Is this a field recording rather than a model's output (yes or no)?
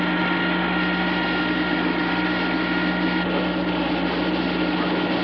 yes